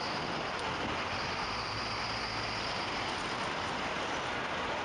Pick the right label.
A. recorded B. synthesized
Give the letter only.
A